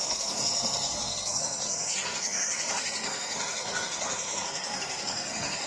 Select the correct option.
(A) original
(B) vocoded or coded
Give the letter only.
B